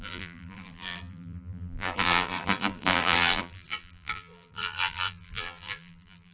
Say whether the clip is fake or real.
fake